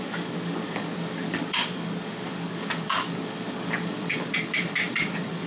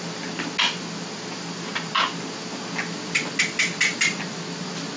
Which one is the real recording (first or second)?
second